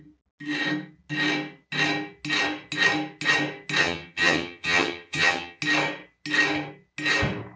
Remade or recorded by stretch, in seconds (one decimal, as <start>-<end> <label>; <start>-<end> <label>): 0.0-3.8 recorded; 3.8-5.6 remade; 5.6-7.6 recorded